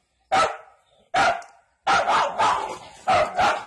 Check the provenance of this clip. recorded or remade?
recorded